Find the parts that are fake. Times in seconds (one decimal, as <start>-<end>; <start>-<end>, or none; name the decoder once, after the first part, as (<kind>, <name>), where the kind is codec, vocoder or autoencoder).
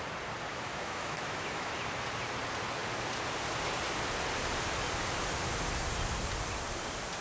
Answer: 0.5-1.7 (autoencoder, DAC-VAE)